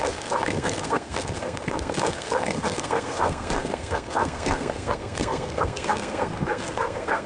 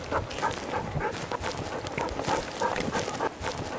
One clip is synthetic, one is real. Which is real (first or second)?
second